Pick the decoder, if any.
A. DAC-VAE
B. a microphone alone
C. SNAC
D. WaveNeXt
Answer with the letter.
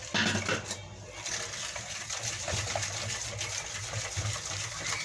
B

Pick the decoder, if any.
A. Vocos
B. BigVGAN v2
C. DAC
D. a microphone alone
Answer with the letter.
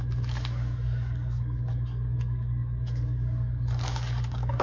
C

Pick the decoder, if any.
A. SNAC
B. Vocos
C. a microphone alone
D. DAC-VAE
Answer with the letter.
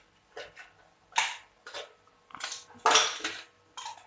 C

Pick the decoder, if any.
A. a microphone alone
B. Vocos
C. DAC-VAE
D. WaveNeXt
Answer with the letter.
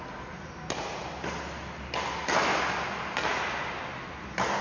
A